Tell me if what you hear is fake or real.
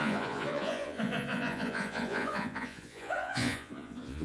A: fake